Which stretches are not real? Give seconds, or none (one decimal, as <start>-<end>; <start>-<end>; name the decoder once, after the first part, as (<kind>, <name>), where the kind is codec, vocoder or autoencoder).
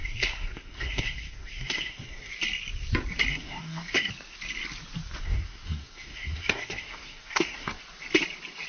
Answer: 0.0-2.3 (codec, SNAC); 3.3-4.1; 5.2-7.8